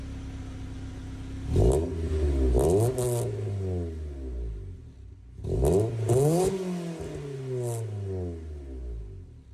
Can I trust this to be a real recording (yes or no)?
yes